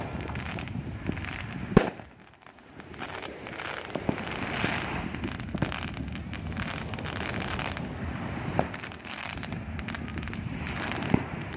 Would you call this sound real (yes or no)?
no